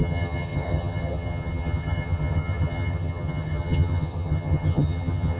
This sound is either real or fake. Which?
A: fake